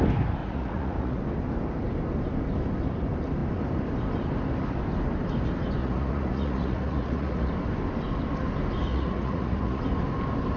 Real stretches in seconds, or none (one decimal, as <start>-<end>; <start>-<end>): 0.0-0.4; 1.2-5.8; 7.5-8.9; 9.8-10.6